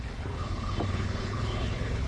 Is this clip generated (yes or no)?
yes